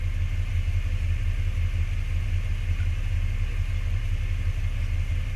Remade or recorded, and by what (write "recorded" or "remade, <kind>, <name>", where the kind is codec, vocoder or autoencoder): recorded